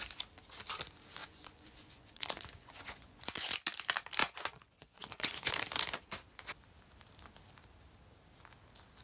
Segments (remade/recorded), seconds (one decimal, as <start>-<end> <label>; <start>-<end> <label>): 0.0-1.2 recorded; 1.2-3.5 remade; 3.5-4.2 recorded; 4.2-5.5 remade; 5.5-9.0 recorded